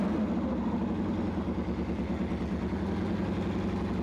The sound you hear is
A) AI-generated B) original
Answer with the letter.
B